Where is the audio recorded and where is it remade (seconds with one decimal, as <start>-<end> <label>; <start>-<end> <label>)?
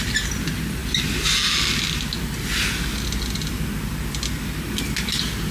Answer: 0.0-5.5 recorded